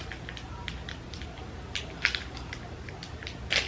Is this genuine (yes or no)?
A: yes